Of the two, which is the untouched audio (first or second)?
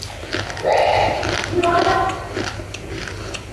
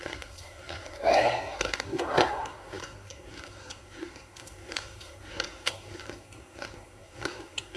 first